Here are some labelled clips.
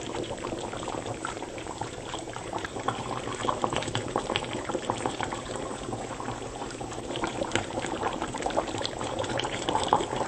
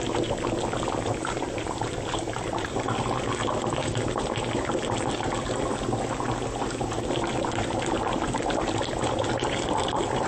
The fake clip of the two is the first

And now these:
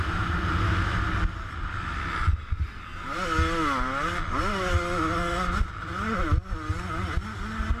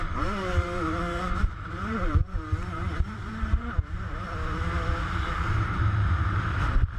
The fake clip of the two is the second